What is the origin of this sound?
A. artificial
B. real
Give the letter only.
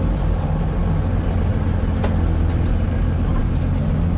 B